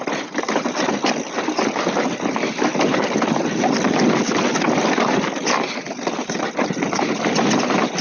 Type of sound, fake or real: real